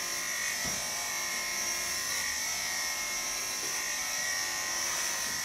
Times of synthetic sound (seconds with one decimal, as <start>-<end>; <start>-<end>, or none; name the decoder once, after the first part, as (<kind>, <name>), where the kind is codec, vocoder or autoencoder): 1.5-2.1 (vocoder, BigVGAN v2); 2.5-3.4; 4.0-5.0